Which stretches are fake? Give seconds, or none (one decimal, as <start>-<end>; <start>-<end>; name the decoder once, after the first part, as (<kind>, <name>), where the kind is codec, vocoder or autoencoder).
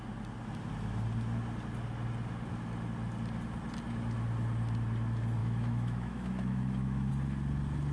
5.4-7.1 (autoencoder, DAC-VAE)